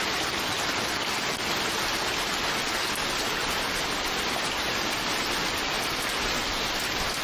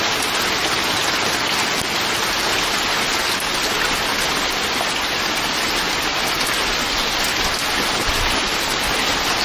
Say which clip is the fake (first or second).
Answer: first